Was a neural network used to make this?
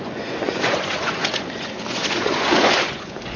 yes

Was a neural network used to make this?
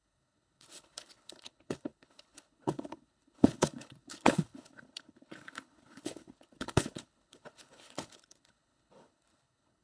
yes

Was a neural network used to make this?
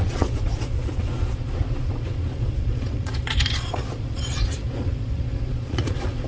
yes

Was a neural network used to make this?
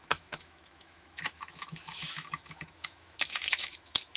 yes